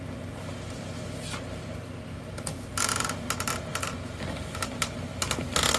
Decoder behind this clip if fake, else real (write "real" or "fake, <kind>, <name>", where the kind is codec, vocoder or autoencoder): real